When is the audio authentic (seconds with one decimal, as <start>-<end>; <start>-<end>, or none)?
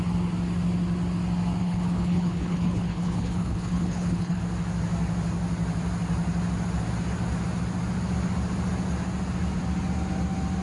0.0-1.6; 4.4-10.6